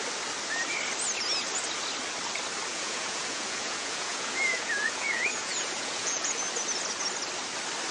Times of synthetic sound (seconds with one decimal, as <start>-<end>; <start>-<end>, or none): 2.7-6.4